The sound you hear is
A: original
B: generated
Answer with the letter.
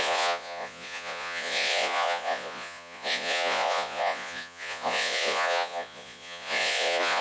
B